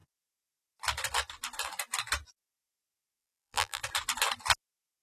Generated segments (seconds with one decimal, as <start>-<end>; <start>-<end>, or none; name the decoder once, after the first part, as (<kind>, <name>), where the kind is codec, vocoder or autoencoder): 3.2-3.8 (vocoder, BigVGAN v2)